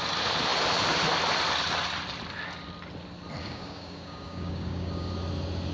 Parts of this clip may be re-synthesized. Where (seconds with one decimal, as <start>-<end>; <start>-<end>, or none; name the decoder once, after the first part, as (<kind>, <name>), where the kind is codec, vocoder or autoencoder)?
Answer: 3.4-5.1 (codec, DAC)